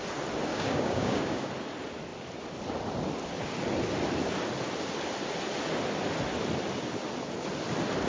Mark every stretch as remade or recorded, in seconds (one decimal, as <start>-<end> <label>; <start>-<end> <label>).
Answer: 0.0-0.5 recorded; 0.5-1.5 remade; 1.5-8.1 recorded

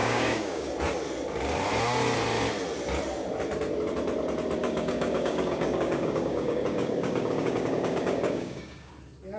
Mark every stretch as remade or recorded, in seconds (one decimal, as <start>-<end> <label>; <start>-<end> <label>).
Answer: 0.0-0.7 remade; 0.7-4.6 recorded; 4.6-8.9 remade; 8.9-9.4 recorded

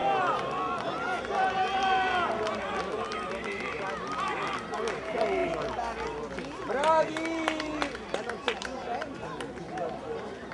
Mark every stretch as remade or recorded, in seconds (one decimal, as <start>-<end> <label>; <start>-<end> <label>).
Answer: 0.0-10.5 recorded

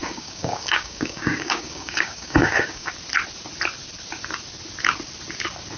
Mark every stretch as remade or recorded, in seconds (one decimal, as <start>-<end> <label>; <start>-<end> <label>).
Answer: 0.0-2.9 remade; 2.9-5.8 recorded

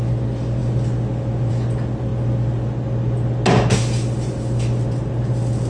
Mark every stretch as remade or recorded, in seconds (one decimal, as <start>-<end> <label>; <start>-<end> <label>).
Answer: 0.0-5.7 recorded